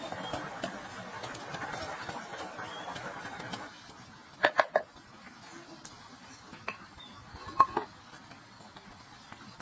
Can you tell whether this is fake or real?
real